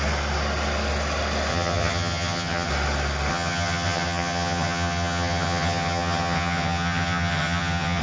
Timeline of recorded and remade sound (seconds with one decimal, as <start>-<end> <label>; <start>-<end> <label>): 0.0-1.5 recorded; 1.5-2.7 remade; 2.7-3.3 recorded; 3.3-8.0 remade

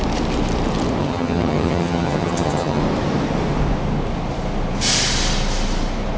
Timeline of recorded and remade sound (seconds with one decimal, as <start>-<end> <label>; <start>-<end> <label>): 0.0-1.0 recorded; 1.0-2.8 remade; 2.8-6.2 recorded

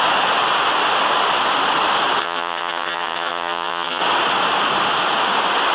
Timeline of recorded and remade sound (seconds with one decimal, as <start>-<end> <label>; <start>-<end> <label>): 0.0-2.2 recorded; 2.2-4.0 remade; 4.0-5.7 recorded